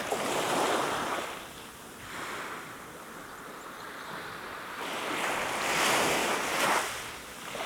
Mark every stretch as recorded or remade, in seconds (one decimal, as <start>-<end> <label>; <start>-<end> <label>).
0.0-7.7 recorded